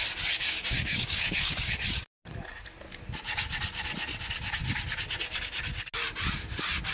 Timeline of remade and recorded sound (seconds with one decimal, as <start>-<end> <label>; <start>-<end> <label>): 0.0-0.4 recorded; 0.4-1.7 remade; 1.7-6.9 recorded